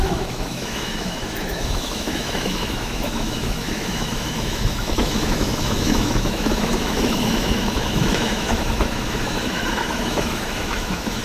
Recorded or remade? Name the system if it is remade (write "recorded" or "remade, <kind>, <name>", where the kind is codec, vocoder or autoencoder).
remade, autoencoder, DAC-VAE